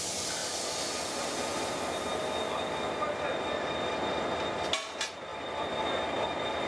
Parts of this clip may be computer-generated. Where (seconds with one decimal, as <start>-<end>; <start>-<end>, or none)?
none